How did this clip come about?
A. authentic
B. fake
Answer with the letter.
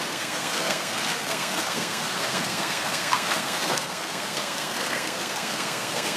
B